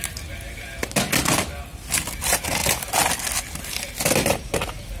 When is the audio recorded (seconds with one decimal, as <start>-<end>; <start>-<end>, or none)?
0.0-5.0